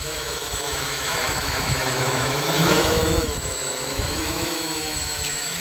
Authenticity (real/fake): fake